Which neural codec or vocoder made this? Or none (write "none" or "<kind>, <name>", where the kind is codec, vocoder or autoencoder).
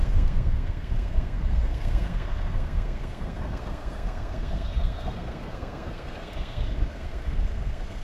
codec, SNAC